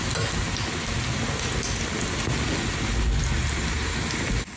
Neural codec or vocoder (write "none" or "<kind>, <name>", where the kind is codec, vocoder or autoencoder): none